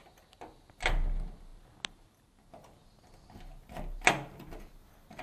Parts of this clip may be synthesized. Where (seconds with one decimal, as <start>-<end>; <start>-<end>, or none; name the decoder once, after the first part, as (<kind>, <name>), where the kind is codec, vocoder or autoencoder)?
none